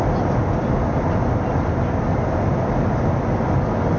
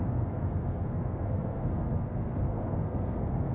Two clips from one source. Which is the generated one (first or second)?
second